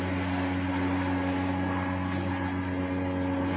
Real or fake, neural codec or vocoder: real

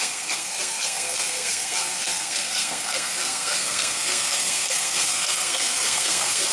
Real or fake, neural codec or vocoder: fake, codec, SNAC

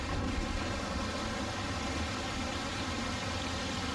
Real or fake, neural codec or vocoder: real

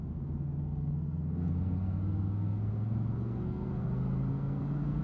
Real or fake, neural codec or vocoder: fake, codec, SNAC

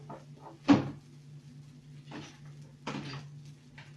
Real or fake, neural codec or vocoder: real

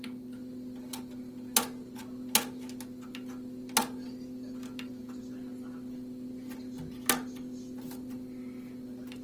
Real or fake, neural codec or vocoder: real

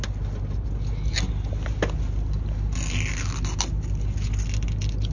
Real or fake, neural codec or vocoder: real